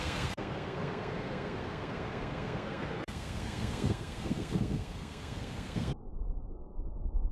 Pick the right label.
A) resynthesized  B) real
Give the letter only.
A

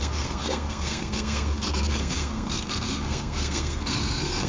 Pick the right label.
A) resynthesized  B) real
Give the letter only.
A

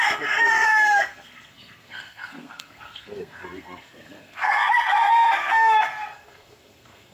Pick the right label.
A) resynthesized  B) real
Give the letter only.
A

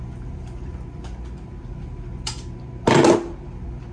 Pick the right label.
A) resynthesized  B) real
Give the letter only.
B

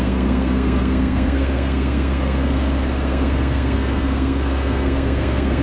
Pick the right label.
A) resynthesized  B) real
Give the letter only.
A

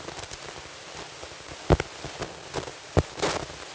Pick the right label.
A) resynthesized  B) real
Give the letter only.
B